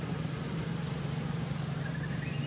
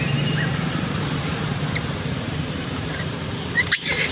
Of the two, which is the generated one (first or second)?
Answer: second